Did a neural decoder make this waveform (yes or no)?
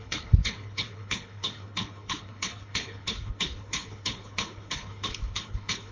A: yes